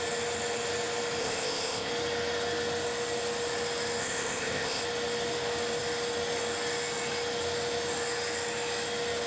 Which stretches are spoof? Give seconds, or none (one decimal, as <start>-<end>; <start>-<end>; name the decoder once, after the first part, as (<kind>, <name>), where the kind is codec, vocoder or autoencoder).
1.2-1.9 (codec, ZipCodec); 4.0-4.8